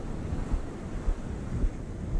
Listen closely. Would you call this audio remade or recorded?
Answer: recorded